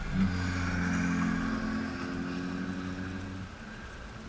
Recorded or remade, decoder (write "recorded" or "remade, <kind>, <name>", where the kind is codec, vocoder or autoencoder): recorded